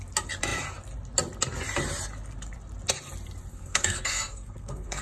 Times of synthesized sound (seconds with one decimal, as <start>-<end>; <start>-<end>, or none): 3.5-5.0